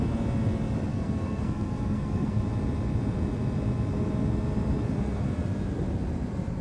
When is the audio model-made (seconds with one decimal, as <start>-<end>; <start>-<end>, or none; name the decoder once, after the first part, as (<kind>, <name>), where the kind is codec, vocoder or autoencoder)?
0.9-2.4 (codec, SNAC)